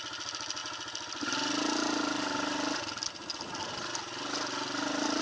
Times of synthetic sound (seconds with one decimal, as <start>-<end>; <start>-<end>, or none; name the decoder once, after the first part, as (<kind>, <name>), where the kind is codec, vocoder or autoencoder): none